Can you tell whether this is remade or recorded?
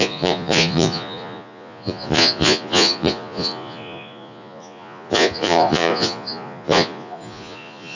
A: remade